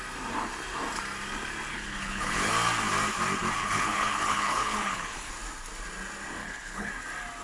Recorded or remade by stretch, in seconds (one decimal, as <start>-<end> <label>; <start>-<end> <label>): 0.0-1.7 recorded; 1.7-2.5 remade; 2.5-3.6 recorded; 3.6-5.3 remade; 5.3-6.4 recorded; 6.4-6.9 remade; 6.9-7.4 recorded